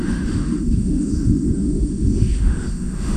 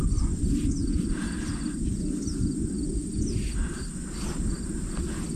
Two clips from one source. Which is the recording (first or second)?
second